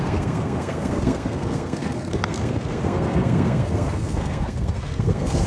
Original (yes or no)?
no